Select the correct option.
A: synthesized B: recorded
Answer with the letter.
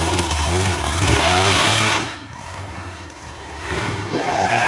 A